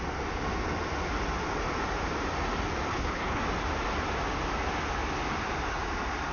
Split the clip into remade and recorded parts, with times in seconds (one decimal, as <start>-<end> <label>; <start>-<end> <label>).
0.0-2.9 recorded; 2.9-3.4 remade; 3.4-6.3 recorded